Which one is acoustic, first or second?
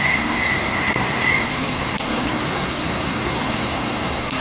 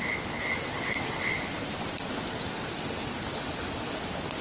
second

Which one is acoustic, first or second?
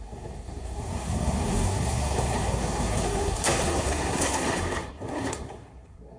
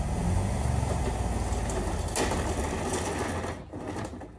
second